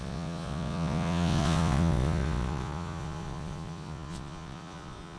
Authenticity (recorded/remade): remade